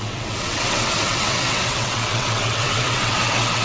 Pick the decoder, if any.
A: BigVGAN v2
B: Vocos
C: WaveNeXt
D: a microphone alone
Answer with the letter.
C